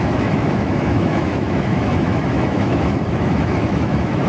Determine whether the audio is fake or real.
fake